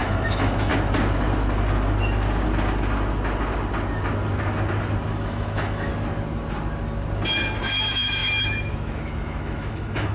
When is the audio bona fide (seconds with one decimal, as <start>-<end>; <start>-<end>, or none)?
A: 0.7-5.1; 5.9-7.6